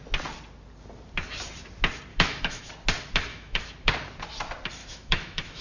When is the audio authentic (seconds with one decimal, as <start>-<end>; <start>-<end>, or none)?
0.0-2.1; 2.7-3.3; 3.9-4.8